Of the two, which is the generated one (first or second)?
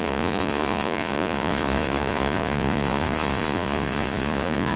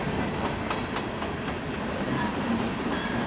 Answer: first